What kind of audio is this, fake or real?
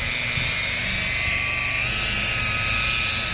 real